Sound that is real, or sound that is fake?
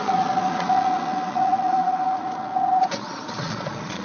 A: fake